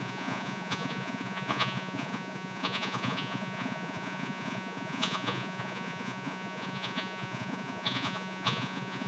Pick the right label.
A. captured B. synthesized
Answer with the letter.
B